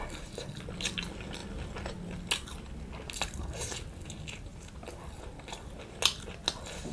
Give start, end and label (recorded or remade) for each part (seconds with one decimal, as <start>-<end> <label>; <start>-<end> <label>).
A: 0.0-6.9 recorded